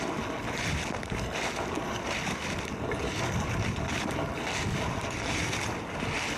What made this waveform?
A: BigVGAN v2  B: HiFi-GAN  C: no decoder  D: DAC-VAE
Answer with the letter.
C